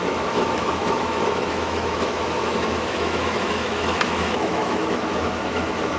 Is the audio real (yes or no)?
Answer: no